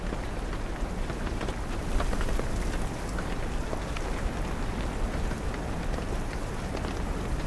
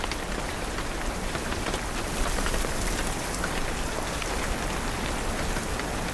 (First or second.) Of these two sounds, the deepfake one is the second